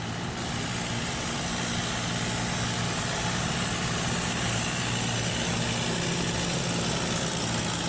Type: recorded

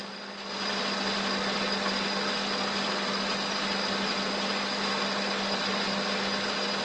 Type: recorded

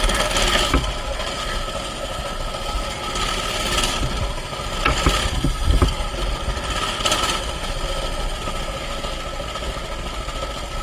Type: recorded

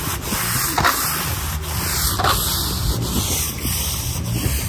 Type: recorded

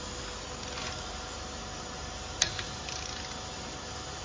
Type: recorded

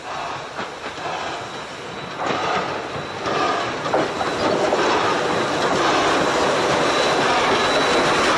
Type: recorded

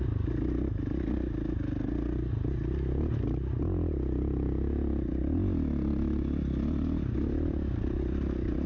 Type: recorded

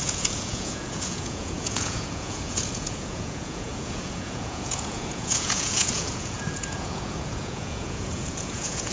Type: remade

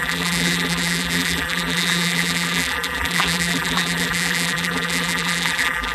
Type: remade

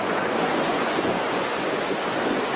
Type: remade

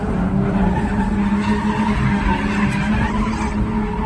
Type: recorded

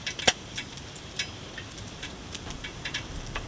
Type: remade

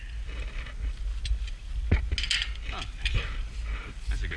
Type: recorded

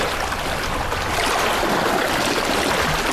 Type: recorded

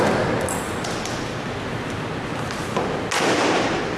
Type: recorded